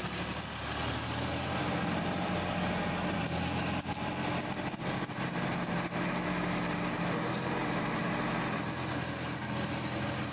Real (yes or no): yes